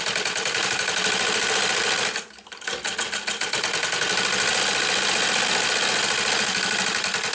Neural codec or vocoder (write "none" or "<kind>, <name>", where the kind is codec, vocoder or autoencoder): none